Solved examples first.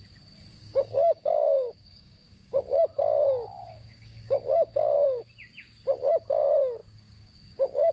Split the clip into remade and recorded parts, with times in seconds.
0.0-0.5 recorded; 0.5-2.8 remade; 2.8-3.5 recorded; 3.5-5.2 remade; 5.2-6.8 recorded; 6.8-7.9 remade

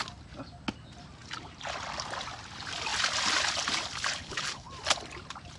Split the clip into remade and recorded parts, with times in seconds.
0.0-4.2 recorded; 4.2-4.7 remade; 4.7-5.6 recorded

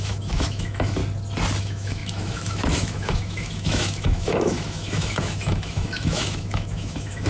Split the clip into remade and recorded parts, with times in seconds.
0.0-1.0 remade; 1.0-1.6 recorded; 1.6-7.3 remade

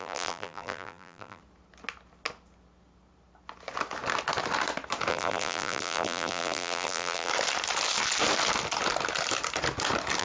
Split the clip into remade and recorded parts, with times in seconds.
0.0-1.4 remade; 1.4-5.1 recorded; 5.1-7.3 remade; 7.3-10.2 recorded

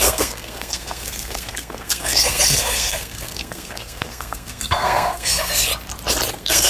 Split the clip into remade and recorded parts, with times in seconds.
0.0-5.7 remade; 5.7-6.3 recorded; 6.3-6.7 remade

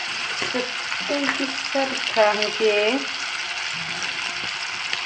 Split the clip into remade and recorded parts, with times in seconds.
0.0-0.5 remade; 0.5-5.1 recorded